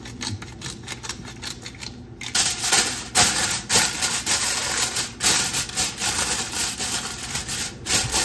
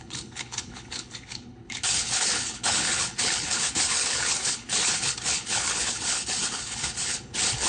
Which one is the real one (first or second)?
first